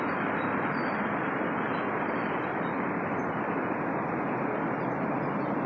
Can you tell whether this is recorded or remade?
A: recorded